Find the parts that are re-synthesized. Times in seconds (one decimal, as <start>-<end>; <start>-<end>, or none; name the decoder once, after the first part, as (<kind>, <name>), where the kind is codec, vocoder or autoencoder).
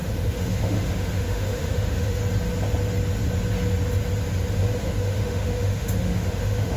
0.0-2.2 (autoencoder, DAC-VAE); 4.5-6.8